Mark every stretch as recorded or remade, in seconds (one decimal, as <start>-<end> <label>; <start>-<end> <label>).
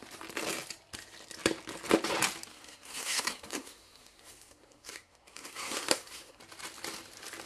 0.0-2.5 recorded; 2.5-6.4 remade; 6.4-7.5 recorded